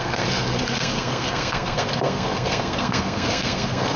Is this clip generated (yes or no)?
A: yes